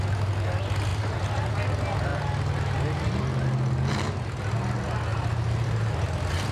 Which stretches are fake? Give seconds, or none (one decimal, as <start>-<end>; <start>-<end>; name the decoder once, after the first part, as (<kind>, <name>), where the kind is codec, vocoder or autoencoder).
0.9-1.5 (vocoder, BigVGAN v2); 5.1-5.9